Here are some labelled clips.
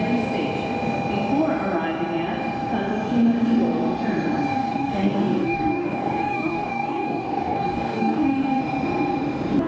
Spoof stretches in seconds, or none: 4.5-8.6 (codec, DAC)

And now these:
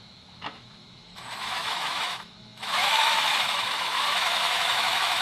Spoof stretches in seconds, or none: 0.0-5.2 (autoencoder, DAC-VAE)

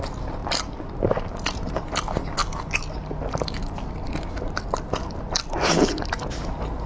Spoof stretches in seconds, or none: 5.7-6.2 (vocoder, BigVGAN v2)

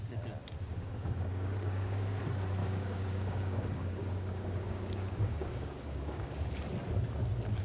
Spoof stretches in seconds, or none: 0.7-2.2 (codec, DAC); 2.6-6.5

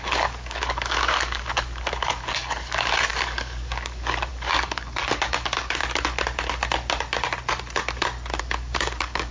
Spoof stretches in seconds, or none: 0.0-5.8 (codec, DAC); 8.4-9.3

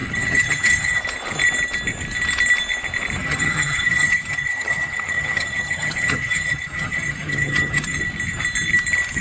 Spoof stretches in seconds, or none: 0.0-1.0 (vocoder, HiFi-GAN); 3.2-8.0

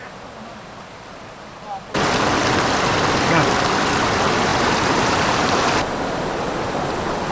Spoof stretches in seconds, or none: 4.5-5.5 (vocoder, BigVGAN v2)